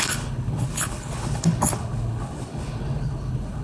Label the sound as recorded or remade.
remade